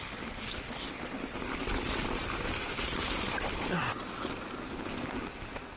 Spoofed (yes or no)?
no